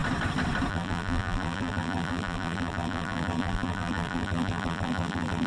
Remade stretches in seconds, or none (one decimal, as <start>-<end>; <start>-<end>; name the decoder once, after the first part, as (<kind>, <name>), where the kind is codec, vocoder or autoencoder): 0.7-5.5 (vocoder, BigVGAN v2)